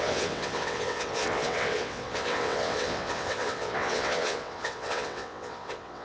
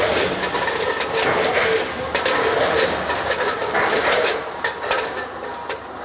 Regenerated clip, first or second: first